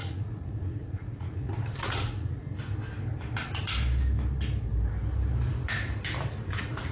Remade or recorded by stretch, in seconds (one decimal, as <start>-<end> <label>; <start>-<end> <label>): 0.0-2.4 remade; 2.4-6.5 recorded; 6.5-6.9 remade

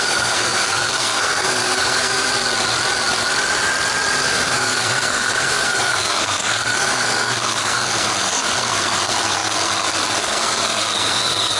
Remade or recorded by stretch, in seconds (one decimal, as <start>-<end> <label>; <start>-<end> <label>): 0.0-2.3 remade; 2.3-4.2 recorded; 4.2-11.6 remade

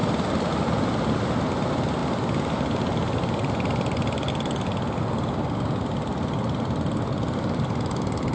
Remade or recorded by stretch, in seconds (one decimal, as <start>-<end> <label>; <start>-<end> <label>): 0.0-0.5 remade; 0.5-2.0 recorded; 2.0-4.3 remade; 4.3-8.3 recorded

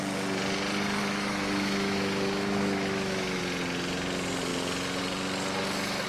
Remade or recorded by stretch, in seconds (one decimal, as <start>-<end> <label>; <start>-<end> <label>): 0.0-1.0 recorded; 1.0-3.4 remade; 3.4-6.1 recorded

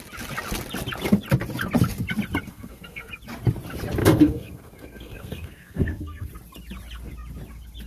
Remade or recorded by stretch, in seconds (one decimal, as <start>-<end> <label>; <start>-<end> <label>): 0.0-2.5 recorded; 2.5-3.1 remade; 3.1-4.0 recorded; 4.0-6.3 remade; 6.3-7.9 recorded

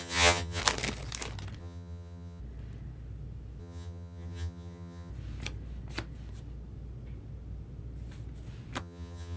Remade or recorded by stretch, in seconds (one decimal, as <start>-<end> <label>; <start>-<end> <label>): 0.0-0.6 remade; 0.6-1.6 recorded; 1.6-2.4 remade; 2.4-3.6 recorded; 3.6-5.1 remade; 5.1-8.8 recorded; 8.8-9.4 remade